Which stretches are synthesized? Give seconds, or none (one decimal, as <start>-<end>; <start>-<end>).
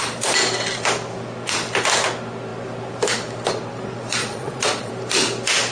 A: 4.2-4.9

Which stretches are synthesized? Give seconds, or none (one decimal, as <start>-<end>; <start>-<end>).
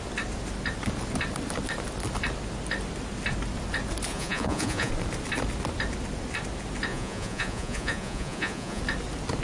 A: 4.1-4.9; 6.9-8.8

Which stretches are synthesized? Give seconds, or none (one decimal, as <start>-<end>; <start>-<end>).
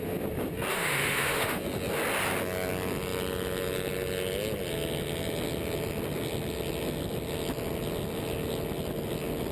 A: 0.7-1.6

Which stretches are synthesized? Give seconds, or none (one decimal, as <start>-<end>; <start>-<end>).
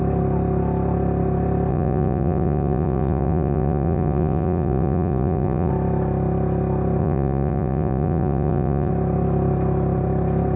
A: 1.7-5.7; 7.0-8.9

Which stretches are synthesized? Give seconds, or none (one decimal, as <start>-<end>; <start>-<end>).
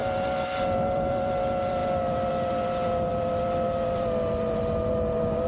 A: none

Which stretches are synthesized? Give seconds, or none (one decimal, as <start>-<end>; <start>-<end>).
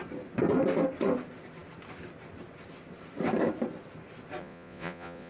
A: 4.4-5.3